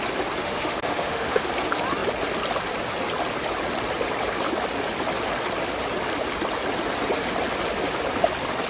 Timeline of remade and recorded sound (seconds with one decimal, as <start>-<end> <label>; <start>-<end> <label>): 0.0-0.4 recorded; 0.4-1.5 remade; 1.5-8.7 recorded